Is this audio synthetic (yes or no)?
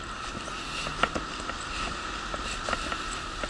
no